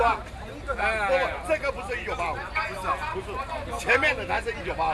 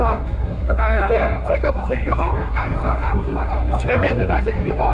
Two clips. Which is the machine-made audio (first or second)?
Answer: second